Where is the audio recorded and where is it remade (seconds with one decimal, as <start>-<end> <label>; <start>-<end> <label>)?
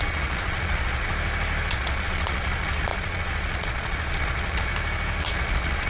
0.0-1.1 remade; 1.1-1.7 recorded; 1.7-4.7 remade; 4.7-5.2 recorded; 5.2-5.9 remade